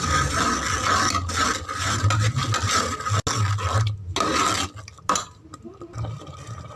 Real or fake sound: real